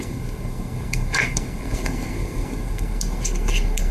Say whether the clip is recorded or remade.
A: remade